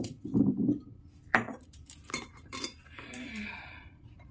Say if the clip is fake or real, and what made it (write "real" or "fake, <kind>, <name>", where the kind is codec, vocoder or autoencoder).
fake, vocoder, BigVGAN v2